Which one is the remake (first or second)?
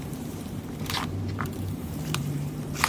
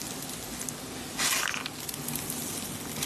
first